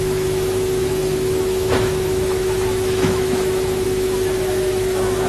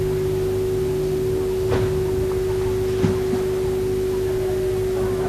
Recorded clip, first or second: second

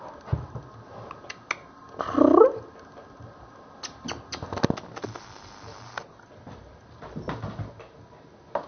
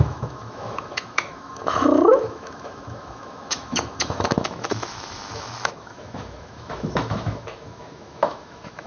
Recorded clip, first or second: first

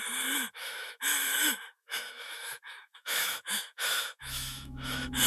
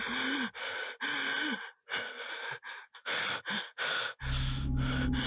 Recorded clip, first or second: second